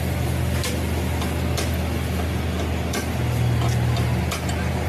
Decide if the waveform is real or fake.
real